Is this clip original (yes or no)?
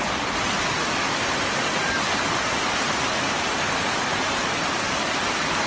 yes